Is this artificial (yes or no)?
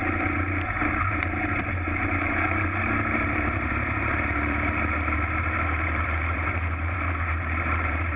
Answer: yes